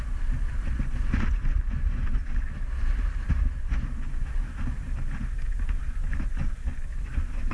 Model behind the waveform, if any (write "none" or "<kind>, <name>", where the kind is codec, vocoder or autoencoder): none